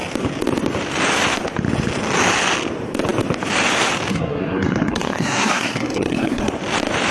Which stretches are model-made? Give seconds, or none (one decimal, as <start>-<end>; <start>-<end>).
4.1-6.5